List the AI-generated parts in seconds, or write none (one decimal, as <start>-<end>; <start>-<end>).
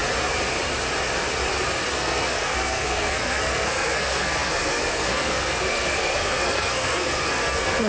1.9-7.9